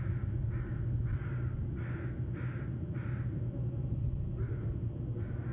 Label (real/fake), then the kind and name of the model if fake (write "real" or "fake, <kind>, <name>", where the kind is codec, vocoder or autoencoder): real